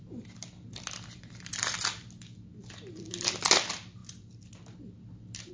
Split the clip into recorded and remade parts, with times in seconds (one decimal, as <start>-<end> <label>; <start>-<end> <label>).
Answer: 0.0-5.5 recorded